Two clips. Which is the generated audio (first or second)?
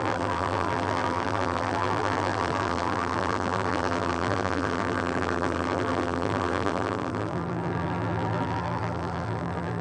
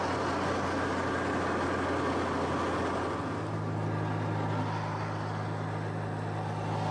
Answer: first